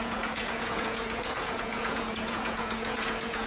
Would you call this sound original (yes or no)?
no